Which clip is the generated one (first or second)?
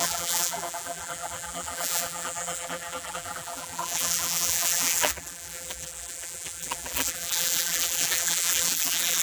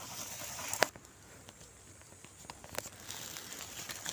first